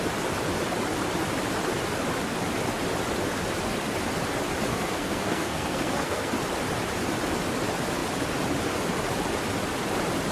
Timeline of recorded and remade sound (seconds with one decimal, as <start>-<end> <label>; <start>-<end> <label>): 0.0-4.7 recorded; 4.7-6.3 remade; 6.3-10.3 recorded